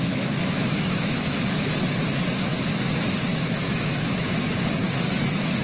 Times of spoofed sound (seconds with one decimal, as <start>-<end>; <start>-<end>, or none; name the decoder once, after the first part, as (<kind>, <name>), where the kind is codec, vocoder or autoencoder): 0.0-1.6 (autoencoder, DAC-VAE); 3.3-4.4